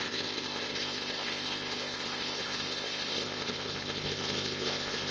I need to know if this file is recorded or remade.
remade